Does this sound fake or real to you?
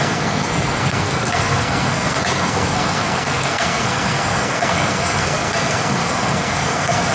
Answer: fake